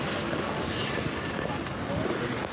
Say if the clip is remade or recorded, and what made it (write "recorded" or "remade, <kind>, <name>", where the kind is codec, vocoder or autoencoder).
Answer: recorded